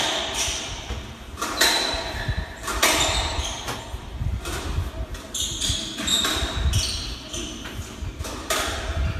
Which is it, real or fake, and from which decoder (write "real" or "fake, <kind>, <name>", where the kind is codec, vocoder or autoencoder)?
fake, vocoder, BigVGAN v2